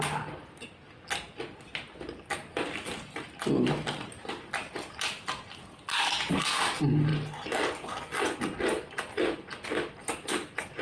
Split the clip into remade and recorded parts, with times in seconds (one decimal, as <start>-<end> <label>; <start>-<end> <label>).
0.0-10.8 recorded